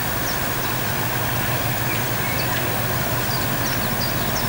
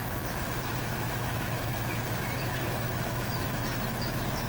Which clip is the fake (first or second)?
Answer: second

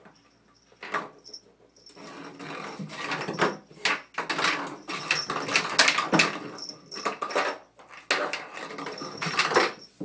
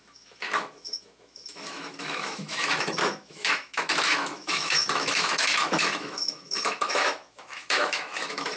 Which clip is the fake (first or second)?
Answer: second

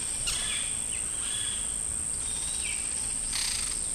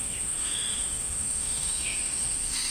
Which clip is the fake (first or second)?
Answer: second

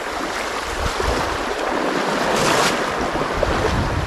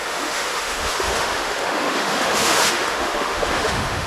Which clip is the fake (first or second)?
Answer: second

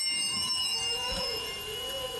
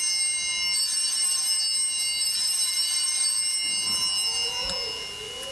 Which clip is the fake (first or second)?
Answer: first